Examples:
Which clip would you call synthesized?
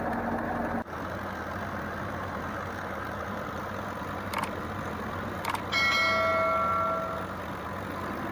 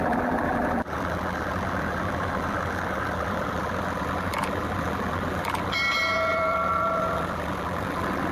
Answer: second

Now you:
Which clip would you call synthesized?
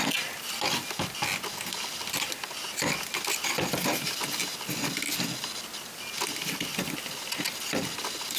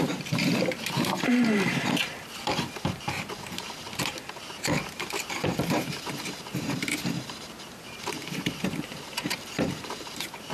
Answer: second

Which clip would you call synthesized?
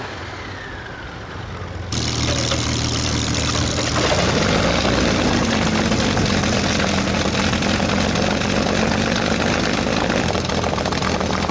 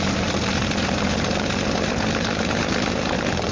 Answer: second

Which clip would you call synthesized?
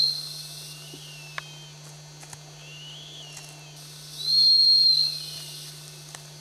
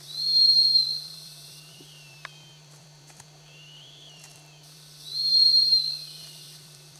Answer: second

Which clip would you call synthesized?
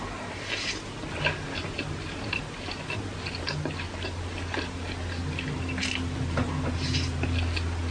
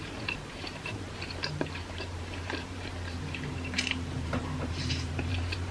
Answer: second